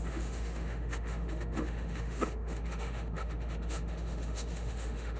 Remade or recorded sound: remade